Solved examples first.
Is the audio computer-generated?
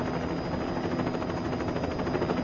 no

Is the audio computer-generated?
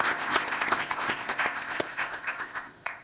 yes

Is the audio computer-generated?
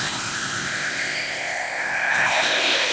yes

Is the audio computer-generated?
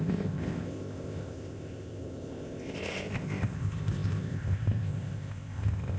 yes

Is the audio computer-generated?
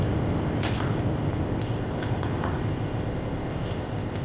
yes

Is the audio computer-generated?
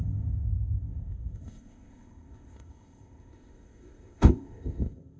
yes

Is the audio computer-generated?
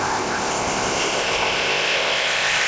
yes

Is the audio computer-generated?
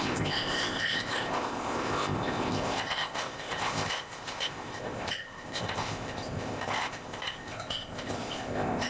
yes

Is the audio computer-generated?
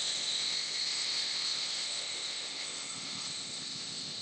yes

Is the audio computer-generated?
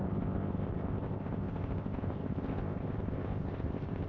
yes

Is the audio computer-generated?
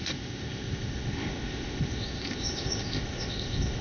yes